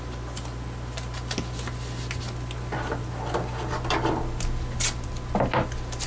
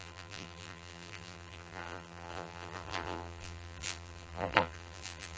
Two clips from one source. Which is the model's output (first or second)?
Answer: second